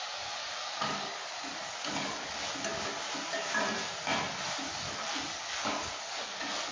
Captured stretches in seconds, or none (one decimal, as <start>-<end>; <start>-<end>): 2.4-4.8

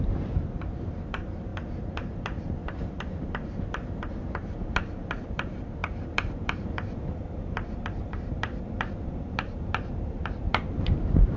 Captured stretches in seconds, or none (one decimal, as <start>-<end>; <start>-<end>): none

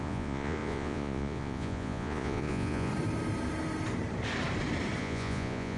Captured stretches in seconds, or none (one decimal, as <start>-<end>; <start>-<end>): 2.9-5.0

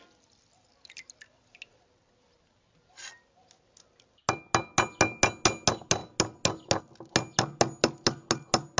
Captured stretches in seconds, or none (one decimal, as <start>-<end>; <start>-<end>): 0.0-8.8

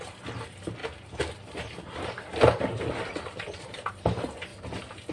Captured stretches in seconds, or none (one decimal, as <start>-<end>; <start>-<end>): 4.5-5.1

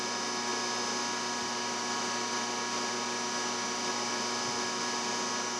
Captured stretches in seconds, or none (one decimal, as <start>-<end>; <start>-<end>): 0.0-5.6